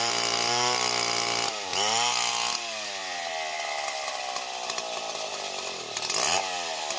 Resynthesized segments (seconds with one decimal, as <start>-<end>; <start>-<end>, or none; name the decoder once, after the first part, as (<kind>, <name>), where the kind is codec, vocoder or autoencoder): none